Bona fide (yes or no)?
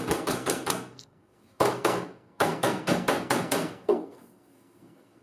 no